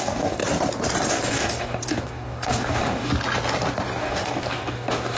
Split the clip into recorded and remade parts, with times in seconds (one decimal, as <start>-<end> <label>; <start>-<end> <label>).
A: 0.0-0.4 remade; 0.4-1.1 recorded; 1.1-3.1 remade; 3.1-4.0 recorded; 4.0-5.2 remade